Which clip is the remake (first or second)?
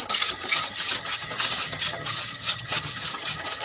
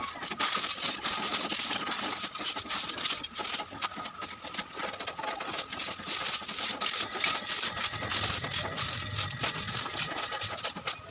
first